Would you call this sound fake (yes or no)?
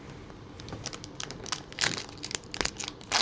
no